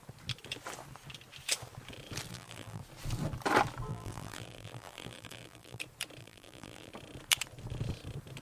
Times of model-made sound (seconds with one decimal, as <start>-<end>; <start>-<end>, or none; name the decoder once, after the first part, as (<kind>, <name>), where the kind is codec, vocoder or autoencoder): 2.3-2.8 (vocoder, BigVGAN v2); 3.9-5.8; 6.2-6.9